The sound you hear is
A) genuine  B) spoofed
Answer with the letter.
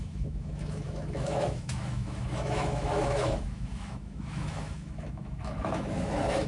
B